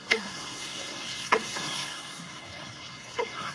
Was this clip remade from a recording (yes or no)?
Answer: yes